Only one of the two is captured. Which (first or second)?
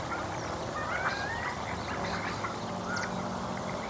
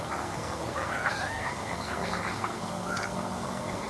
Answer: first